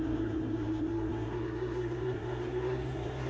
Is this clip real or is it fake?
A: fake